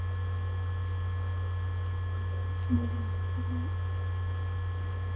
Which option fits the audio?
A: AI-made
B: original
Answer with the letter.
B